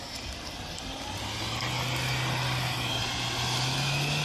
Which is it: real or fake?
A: real